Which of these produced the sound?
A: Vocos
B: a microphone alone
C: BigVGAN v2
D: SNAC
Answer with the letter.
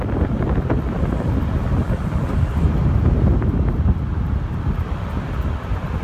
B